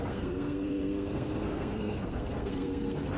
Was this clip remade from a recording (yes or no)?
yes